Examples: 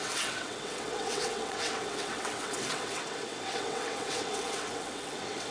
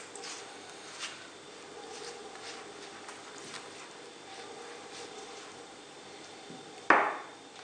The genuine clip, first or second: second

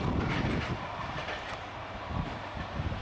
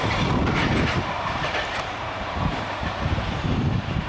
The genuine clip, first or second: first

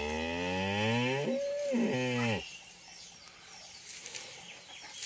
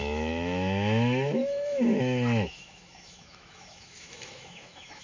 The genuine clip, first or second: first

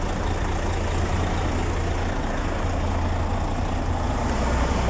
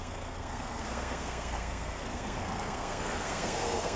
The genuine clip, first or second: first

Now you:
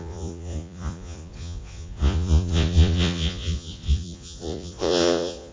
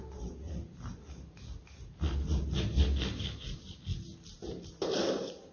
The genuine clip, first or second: second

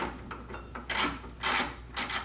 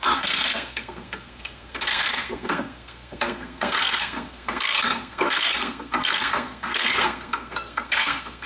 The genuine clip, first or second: first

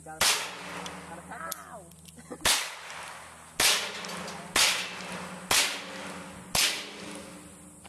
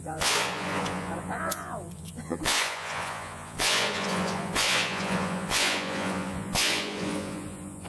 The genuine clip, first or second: first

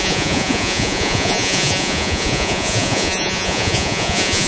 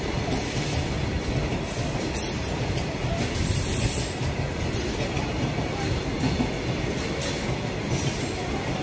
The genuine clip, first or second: second